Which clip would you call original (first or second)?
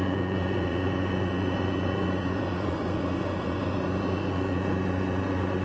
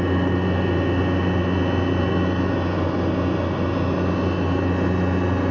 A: second